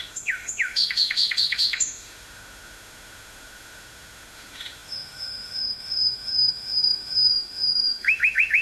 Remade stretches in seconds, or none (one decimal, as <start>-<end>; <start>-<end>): 0.0-8.6